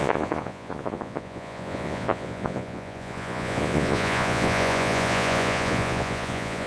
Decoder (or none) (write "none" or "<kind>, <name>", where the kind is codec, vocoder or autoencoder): vocoder, Vocos